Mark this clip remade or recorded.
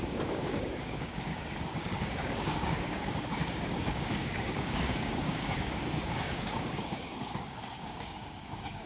remade